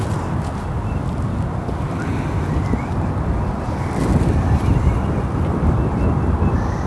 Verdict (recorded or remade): recorded